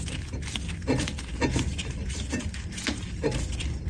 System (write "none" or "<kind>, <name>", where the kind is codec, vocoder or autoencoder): none